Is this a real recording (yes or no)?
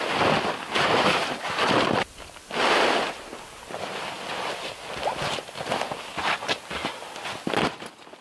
yes